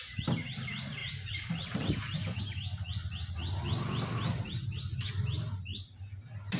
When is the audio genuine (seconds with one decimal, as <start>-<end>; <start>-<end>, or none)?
0.0-1.0; 2.4-5.7